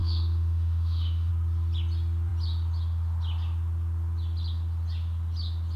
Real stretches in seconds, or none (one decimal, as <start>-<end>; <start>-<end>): 1.3-5.8